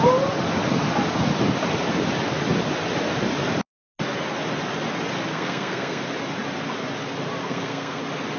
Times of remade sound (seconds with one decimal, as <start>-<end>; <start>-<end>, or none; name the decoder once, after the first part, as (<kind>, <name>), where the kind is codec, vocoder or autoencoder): 5.3-6.0 (codec, SNAC); 7.4-8.0